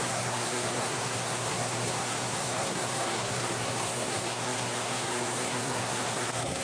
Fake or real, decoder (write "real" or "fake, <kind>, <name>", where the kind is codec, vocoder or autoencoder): fake, codec, SNAC